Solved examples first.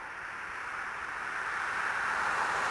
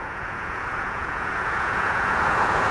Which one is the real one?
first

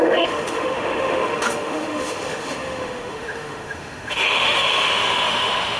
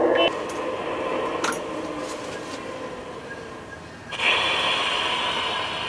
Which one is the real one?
second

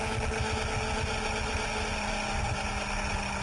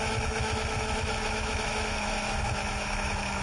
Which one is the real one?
first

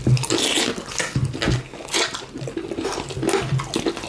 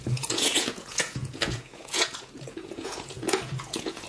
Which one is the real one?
first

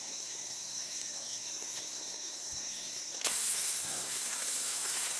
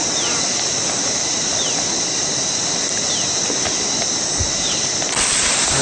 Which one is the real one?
second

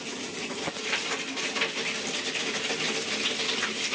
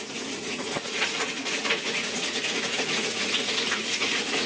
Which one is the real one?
first